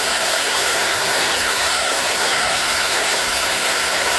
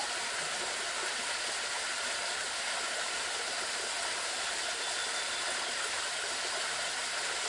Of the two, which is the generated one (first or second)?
first